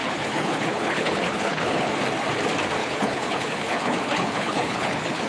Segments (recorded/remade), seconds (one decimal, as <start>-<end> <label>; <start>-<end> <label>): 0.0-1.9 remade; 1.9-2.8 recorded; 2.8-5.3 remade